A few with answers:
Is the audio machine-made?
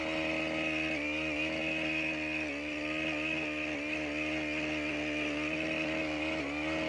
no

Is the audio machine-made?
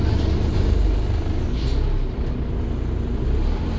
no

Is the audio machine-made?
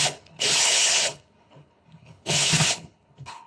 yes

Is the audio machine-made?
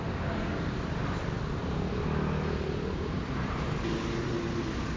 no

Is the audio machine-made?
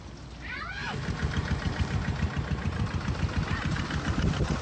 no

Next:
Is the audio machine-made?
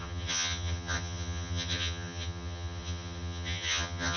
yes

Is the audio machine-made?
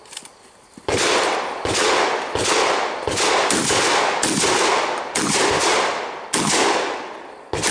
no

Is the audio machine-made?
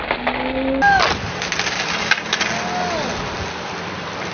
no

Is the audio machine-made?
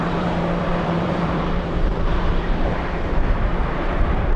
yes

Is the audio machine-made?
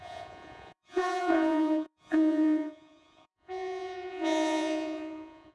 yes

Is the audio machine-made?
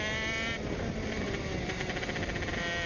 no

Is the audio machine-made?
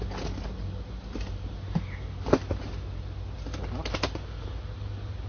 no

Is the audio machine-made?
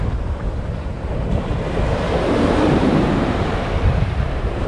yes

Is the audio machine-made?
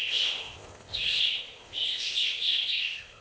yes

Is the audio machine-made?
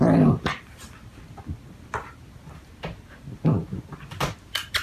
no